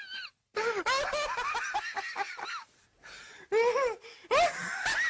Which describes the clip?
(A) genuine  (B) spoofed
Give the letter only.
A